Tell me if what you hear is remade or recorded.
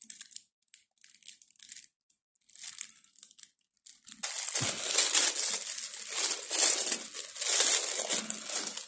recorded